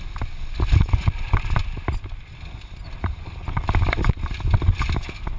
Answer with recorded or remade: recorded